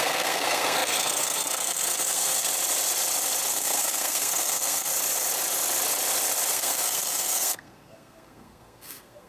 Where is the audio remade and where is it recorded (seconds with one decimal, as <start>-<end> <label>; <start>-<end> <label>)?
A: 0.0-2.5 remade; 2.5-3.5 recorded; 3.5-4.9 remade; 4.9-6.5 recorded; 6.5-9.3 remade